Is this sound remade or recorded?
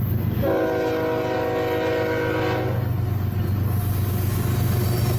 recorded